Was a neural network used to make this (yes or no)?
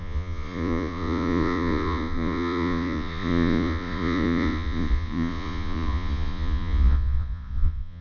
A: yes